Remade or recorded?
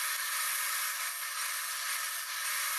recorded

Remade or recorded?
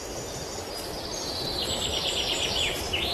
remade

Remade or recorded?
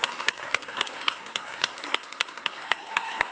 remade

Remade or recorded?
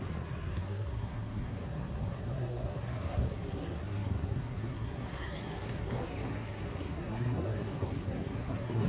remade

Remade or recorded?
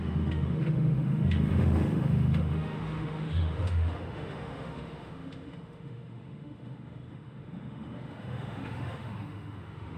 remade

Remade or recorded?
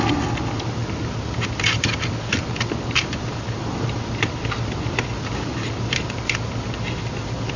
recorded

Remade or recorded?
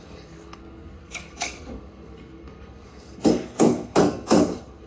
remade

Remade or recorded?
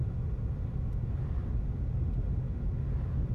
recorded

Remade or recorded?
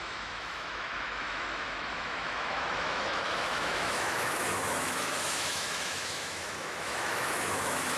remade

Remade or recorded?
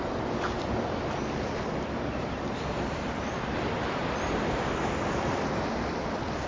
remade